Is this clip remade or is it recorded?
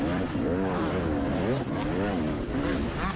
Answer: remade